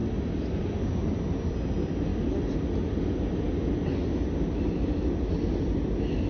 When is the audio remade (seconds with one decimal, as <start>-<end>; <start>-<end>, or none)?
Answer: none